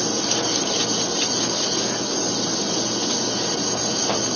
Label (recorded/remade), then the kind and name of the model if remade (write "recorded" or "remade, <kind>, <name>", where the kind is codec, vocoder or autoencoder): recorded